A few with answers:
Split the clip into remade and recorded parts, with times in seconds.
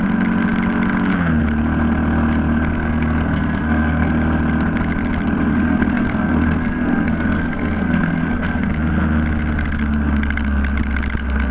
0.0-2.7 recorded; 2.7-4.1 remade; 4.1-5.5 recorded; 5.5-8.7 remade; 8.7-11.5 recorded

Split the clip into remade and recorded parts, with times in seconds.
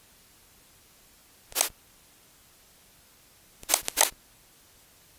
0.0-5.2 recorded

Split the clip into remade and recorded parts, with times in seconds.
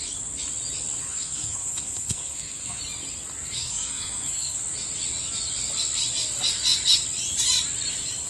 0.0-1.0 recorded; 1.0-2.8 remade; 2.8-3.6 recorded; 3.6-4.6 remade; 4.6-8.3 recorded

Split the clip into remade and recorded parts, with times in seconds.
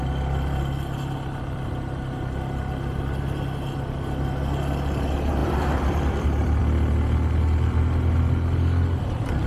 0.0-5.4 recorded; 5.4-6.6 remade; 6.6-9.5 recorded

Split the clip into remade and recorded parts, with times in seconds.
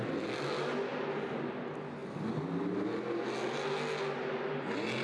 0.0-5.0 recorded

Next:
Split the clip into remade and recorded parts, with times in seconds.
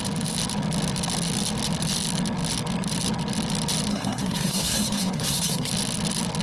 0.0-3.9 recorded; 3.9-5.7 remade; 5.7-6.4 recorded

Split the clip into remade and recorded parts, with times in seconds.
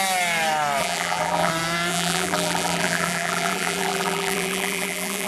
0.0-0.8 recorded; 0.8-1.5 remade; 1.5-1.9 recorded; 1.9-5.3 remade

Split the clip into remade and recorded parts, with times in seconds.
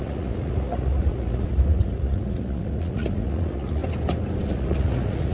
0.0-3.8 remade; 3.8-4.4 recorded; 4.4-5.3 remade